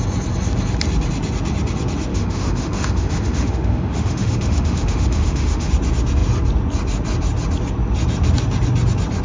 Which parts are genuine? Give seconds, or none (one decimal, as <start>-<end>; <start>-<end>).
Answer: 0.0-2.1; 5.7-9.2

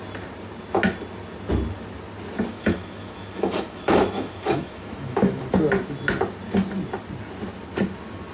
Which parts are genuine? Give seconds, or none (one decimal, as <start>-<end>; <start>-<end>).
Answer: 0.0-2.5; 5.4-8.3

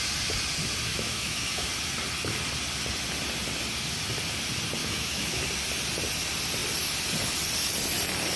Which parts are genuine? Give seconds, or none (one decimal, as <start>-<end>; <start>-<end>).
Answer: 0.0-0.9; 1.7-4.8; 5.4-8.4

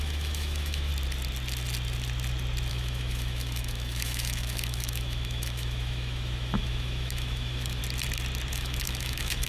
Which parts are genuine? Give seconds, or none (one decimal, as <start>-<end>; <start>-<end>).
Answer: 0.9-2.7; 7.8-8.5

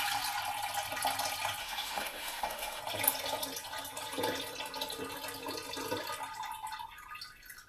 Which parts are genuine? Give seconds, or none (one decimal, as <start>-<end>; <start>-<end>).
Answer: 0.0-1.6; 2.8-7.7